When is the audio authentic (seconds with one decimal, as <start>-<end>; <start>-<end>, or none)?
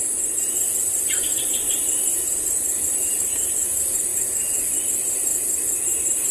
5.3-6.3